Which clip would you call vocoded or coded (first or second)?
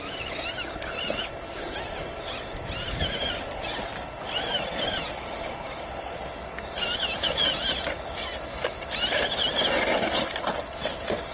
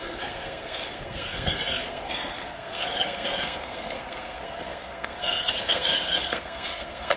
second